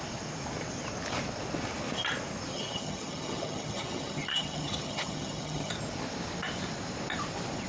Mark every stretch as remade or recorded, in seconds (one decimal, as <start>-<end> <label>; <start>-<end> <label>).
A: 0.0-2.5 recorded; 2.5-5.7 remade; 5.7-7.7 recorded